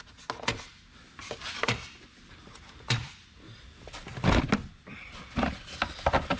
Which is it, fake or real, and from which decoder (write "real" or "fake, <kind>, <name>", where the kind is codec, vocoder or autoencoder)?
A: real